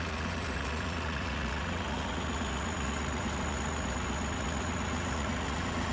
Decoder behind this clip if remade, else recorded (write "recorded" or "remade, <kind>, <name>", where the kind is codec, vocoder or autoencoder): remade, vocoder, Vocos